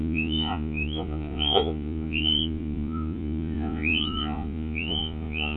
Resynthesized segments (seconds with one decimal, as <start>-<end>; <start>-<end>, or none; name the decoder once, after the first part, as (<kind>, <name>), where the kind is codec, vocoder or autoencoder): 0.0-5.6 (vocoder, Vocos)